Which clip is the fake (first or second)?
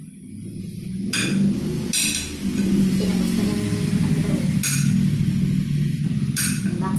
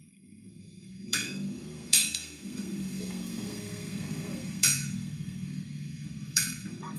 second